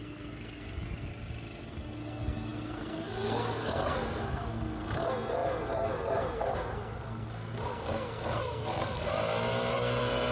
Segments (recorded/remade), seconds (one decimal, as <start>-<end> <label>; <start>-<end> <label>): 0.0-1.1 remade; 1.1-1.7 recorded; 1.7-9.1 remade; 9.1-9.7 recorded; 9.7-10.3 remade

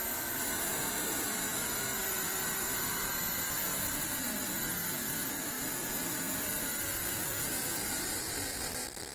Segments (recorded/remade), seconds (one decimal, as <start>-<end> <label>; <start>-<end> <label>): 0.0-9.1 recorded

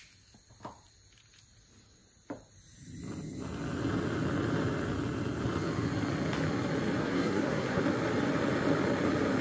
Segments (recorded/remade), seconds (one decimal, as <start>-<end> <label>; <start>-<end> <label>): 0.0-7.0 recorded; 7.0-7.8 remade; 7.8-9.4 recorded

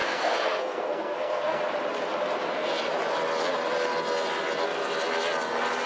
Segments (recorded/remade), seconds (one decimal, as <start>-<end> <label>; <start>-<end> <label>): 0.0-1.6 remade; 1.6-5.9 recorded